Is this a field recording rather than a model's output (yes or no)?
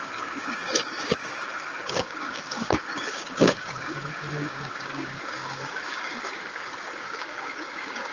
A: no